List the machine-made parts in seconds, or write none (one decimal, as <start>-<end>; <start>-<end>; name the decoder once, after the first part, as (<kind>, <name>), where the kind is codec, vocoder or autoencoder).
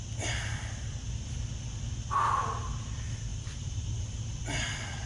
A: 3.3-4.0 (vocoder, BigVGAN v2)